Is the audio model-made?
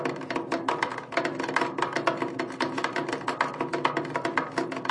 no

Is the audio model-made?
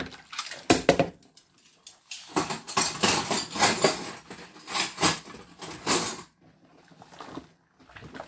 no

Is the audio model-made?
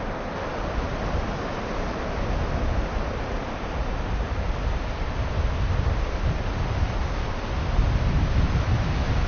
no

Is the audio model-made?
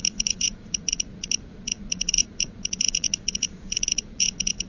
yes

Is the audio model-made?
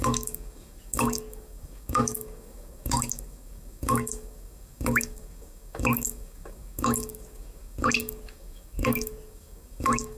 yes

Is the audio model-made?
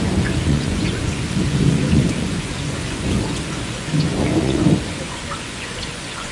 yes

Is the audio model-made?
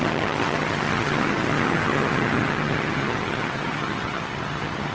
yes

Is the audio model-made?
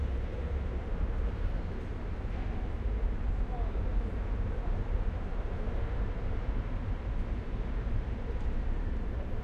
yes